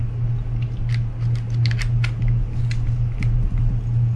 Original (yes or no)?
yes